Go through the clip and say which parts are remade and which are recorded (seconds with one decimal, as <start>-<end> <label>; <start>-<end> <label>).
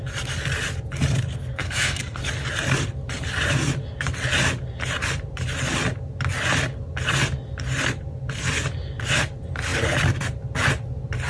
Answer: 0.0-1.3 recorded; 1.3-2.2 remade; 2.2-11.3 recorded